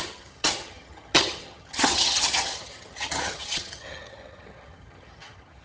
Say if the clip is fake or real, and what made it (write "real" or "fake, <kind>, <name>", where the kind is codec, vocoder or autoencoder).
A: fake, vocoder, HiFi-GAN